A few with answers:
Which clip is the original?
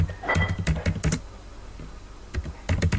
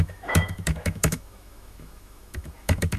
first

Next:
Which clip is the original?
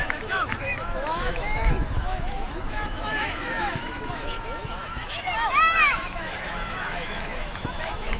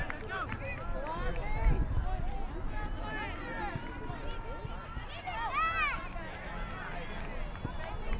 second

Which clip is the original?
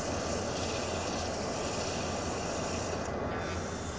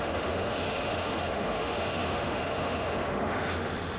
first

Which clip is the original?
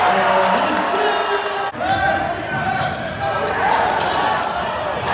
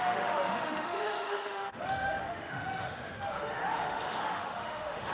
first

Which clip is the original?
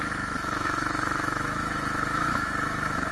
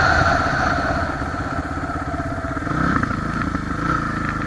second